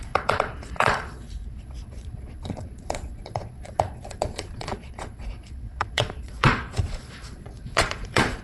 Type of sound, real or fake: fake